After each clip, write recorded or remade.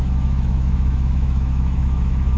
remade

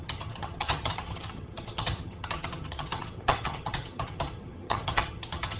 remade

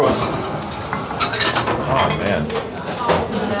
recorded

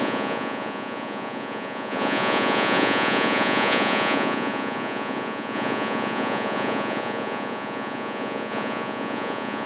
remade